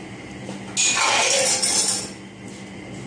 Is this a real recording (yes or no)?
yes